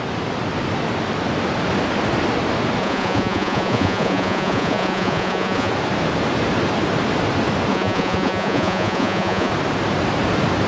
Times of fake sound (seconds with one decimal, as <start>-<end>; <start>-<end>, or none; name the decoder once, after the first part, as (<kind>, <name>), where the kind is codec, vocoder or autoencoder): 2.8-5.7 (vocoder, Vocos); 7.7-9.5